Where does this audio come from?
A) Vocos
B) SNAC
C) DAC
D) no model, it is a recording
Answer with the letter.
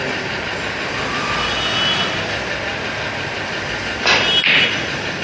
D